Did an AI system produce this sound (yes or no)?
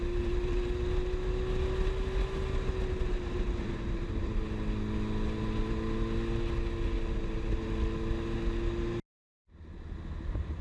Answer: no